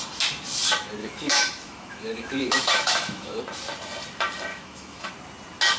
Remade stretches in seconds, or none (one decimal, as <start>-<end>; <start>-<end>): 1.0-3.4; 4.5-5.1